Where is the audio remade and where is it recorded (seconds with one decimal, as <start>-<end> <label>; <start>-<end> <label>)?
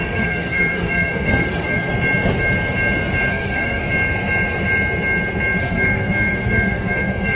0.0-1.9 remade; 1.9-3.3 recorded; 3.3-3.8 remade; 3.8-5.6 recorded; 5.6-7.3 remade